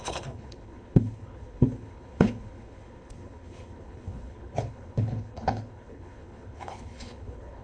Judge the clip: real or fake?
fake